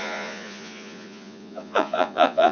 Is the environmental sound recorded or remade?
remade